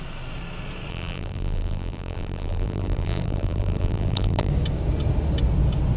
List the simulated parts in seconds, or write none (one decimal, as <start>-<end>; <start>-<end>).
0.9-4.5

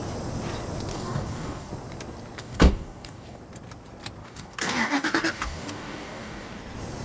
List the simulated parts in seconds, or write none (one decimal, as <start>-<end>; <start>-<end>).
0.9-1.7; 2.4-3.4; 4.2-6.6

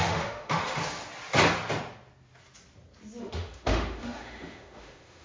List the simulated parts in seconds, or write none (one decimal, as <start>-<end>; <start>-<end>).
0.0-0.8; 3.2-5.2